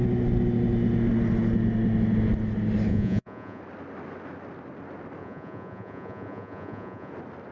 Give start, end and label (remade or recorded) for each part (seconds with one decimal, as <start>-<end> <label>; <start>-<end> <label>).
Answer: 0.0-2.9 recorded; 2.9-3.6 remade; 3.6-5.2 recorded; 5.2-7.1 remade; 7.1-7.5 recorded